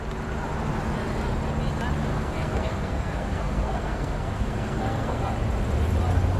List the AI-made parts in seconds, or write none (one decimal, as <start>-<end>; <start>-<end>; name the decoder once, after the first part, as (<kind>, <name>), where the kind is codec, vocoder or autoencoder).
2.1-5.3 (codec, SNAC)